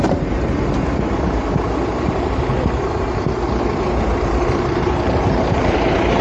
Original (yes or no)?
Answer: no